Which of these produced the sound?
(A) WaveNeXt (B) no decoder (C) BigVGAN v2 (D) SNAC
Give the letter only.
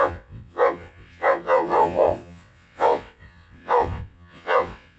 A